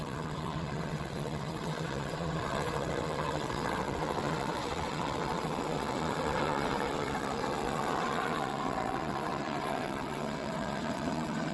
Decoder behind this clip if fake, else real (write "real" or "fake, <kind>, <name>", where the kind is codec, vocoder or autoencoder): fake, vocoder, WaveNeXt